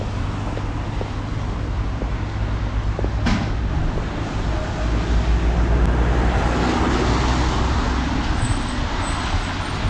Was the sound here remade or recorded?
recorded